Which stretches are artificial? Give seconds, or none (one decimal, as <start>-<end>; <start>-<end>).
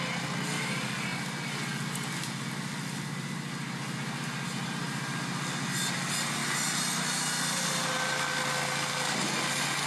none